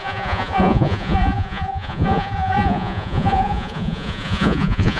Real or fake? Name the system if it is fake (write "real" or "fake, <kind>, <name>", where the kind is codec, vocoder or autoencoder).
fake, vocoder, Vocos